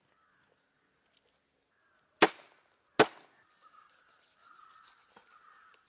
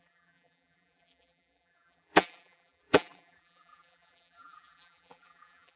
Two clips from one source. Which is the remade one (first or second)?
second